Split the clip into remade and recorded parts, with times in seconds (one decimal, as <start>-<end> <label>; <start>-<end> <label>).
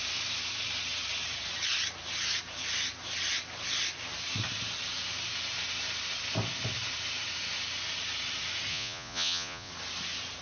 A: 0.0-8.7 recorded; 8.7-9.7 remade; 9.7-10.4 recorded